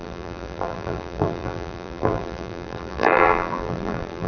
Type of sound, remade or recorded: remade